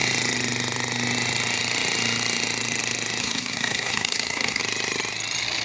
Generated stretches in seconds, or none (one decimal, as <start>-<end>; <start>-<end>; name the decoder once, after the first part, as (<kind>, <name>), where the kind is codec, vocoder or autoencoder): 3.2-4.6 (codec, SNAC)